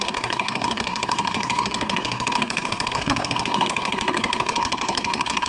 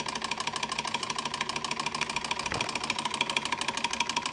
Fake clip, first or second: first